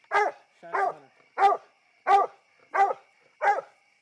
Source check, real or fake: real